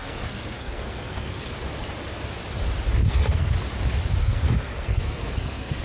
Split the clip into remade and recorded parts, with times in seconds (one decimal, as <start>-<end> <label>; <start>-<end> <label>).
0.0-1.5 remade; 1.5-2.9 recorded; 2.9-3.5 remade; 3.5-4.2 recorded; 4.2-5.8 remade